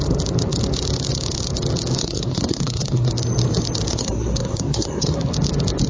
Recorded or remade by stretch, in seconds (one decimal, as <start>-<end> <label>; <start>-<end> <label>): 0.0-2.0 recorded; 2.0-3.1 remade; 3.1-3.9 recorded; 3.9-5.3 remade; 5.3-5.9 recorded